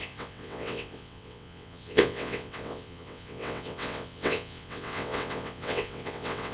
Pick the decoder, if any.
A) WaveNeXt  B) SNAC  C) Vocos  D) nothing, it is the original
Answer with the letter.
A